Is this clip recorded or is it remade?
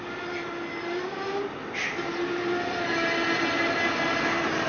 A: recorded